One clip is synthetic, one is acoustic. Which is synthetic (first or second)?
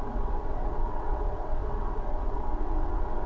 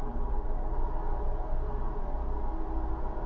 first